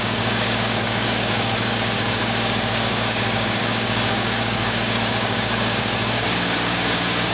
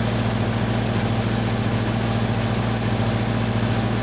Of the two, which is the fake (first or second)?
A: first